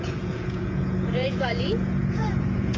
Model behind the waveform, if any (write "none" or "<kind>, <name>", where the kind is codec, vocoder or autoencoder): vocoder, Vocos